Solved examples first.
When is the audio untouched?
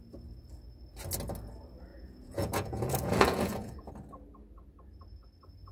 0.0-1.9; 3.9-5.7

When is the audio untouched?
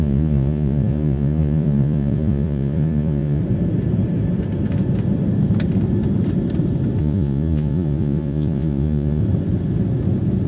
3.4-7.0; 9.2-10.5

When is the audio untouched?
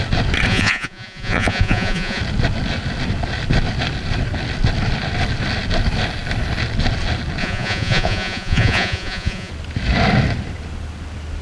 0.0-0.5; 2.2-7.4; 9.5-11.4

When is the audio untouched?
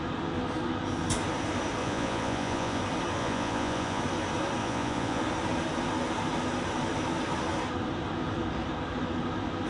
0.0-1.8; 2.8-3.2; 4.0-4.6; 5.2-9.7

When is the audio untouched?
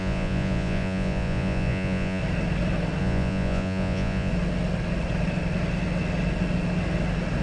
2.2-3.0; 4.3-7.4